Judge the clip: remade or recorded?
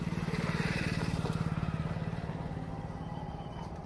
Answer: recorded